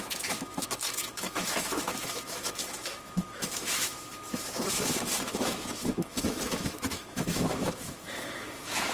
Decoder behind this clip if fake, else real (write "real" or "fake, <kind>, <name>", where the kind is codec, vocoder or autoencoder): fake, autoencoder, DAC-VAE